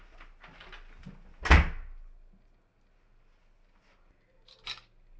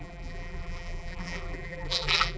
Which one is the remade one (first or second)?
second